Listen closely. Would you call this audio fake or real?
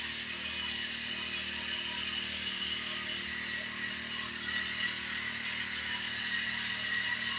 real